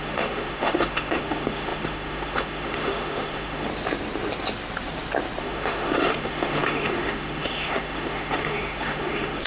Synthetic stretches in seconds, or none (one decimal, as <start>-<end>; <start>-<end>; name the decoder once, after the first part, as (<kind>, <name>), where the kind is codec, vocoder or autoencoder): 0.0-3.7 (autoencoder, DAC-VAE); 5.4-9.5